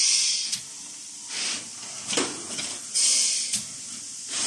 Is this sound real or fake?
real